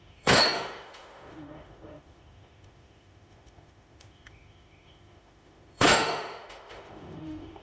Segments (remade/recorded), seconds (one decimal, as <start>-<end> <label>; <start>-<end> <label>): 0.0-7.6 remade